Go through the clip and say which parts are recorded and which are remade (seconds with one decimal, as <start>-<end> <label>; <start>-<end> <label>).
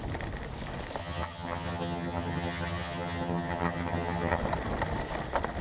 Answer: 0.0-1.0 recorded; 1.0-4.4 remade; 4.4-5.6 recorded